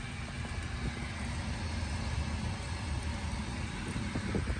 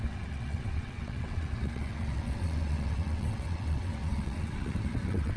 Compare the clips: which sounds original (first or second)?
first